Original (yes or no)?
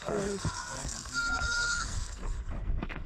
no